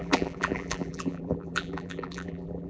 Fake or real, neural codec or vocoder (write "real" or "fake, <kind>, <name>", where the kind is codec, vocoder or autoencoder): fake, vocoder, BigVGAN v2